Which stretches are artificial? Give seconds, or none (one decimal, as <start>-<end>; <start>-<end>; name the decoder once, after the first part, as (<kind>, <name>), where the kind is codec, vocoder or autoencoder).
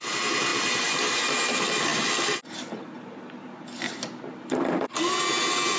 none